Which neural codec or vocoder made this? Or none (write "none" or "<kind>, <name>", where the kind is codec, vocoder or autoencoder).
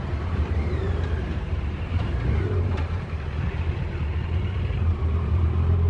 vocoder, BigVGAN v2